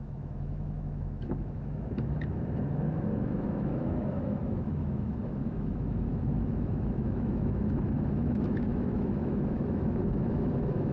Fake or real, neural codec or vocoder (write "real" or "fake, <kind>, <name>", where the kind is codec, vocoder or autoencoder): fake, autoencoder, DAC-VAE